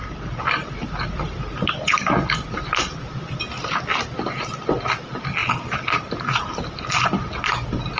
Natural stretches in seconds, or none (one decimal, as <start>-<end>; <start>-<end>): 0.0-8.0